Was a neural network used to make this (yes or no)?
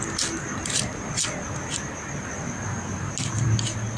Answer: no